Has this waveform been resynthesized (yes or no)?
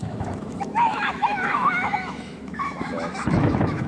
yes